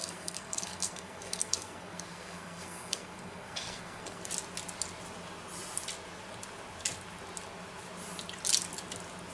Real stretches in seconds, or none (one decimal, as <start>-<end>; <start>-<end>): 4.3-9.3